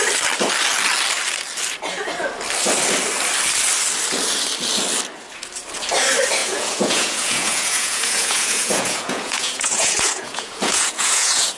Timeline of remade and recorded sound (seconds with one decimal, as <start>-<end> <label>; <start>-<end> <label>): 0.0-6.4 recorded; 6.4-11.6 remade